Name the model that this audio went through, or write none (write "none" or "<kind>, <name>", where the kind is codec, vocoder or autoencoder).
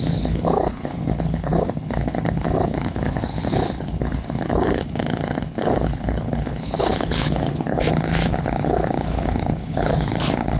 codec, HILCodec